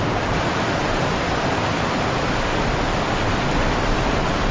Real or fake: real